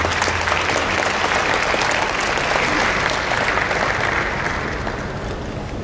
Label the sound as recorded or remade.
recorded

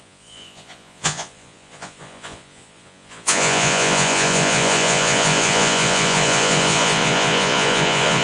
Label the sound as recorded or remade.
remade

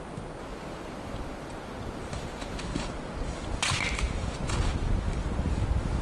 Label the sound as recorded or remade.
recorded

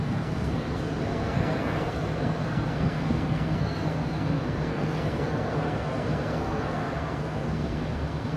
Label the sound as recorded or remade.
remade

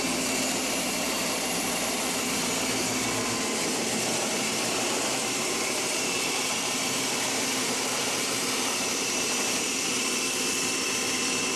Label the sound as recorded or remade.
remade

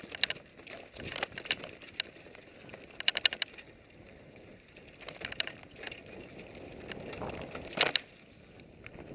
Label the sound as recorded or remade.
recorded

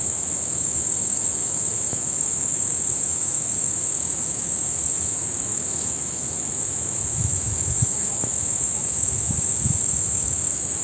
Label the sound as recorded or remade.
remade